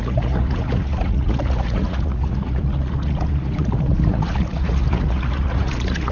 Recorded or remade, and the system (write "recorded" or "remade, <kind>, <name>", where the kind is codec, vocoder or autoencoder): remade, vocoder, Vocos